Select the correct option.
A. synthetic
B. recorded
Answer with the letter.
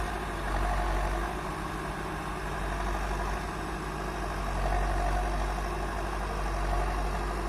B